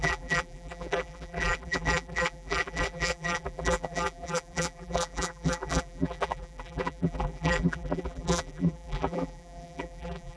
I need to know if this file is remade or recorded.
remade